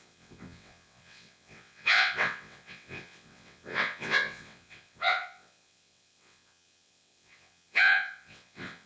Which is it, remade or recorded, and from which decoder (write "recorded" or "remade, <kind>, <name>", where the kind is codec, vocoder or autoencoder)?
remade, vocoder, WaveNeXt